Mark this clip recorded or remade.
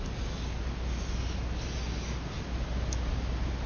recorded